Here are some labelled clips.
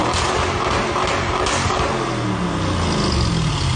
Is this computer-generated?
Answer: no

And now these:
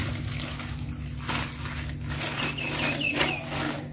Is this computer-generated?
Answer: no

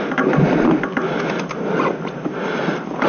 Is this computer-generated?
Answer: no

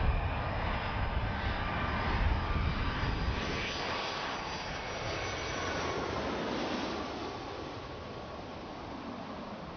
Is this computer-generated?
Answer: no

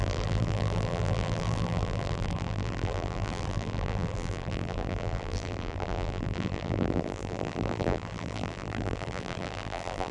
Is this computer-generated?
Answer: yes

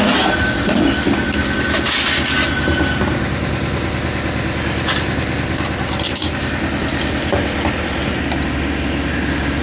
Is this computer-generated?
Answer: no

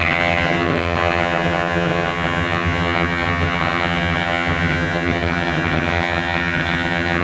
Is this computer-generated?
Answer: yes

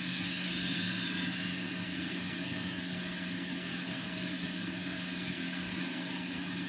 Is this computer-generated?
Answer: yes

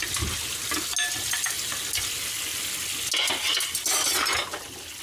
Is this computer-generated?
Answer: no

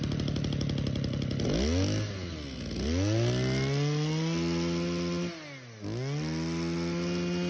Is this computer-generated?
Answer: no